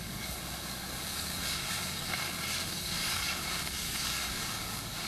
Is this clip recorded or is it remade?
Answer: remade